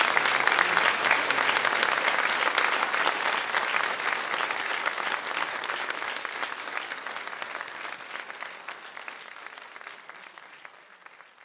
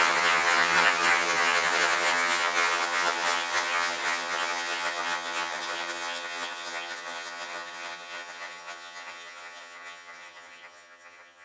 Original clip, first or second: first